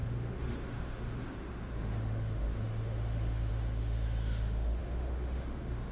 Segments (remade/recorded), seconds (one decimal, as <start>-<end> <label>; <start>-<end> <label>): 0.0-5.9 remade